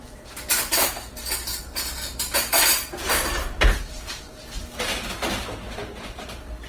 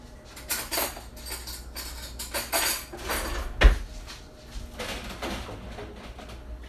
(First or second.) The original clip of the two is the second